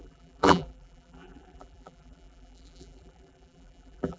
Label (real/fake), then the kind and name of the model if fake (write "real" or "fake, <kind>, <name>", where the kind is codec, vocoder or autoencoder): fake, vocoder, BigVGAN v2